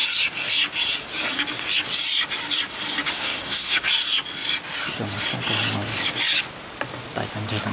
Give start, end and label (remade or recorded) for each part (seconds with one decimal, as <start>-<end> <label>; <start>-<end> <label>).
0.0-3.1 recorded; 3.1-3.9 remade; 3.9-7.7 recorded